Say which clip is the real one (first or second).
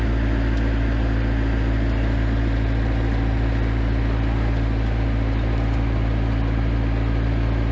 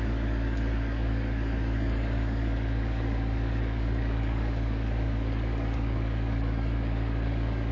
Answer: first